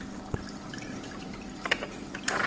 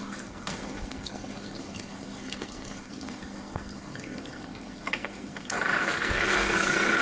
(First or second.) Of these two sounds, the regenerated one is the second